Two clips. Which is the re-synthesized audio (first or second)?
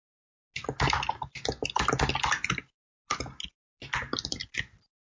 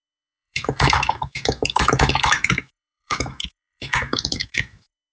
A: second